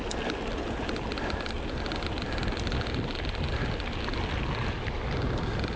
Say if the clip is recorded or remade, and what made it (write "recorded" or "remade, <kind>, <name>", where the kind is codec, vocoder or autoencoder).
recorded